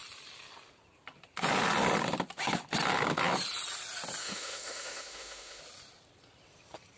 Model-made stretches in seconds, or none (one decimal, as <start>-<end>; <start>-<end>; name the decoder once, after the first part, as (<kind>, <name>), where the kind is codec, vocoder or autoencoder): 4.2-5.6 (autoencoder, DAC-VAE)

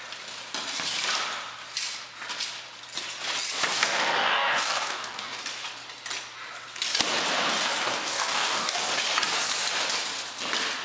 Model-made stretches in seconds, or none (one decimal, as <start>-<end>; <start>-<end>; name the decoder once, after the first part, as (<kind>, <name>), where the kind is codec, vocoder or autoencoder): 3.7-5.4 (codec, DAC); 8.0-8.8

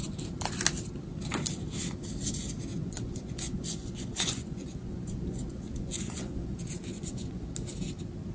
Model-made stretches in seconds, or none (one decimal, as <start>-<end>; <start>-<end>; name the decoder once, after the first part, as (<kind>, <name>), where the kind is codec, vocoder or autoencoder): 2.7-7.5 (vocoder, Vocos)

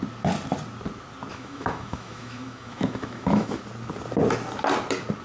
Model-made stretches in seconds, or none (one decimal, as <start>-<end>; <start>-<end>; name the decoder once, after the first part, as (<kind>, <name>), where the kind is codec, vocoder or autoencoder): 1.3-3.6 (autoencoder, DAC-VAE)

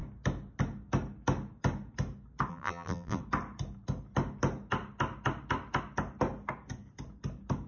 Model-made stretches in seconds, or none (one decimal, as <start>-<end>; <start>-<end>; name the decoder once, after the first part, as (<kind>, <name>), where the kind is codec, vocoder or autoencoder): 2.5-3.2 (vocoder, BigVGAN v2)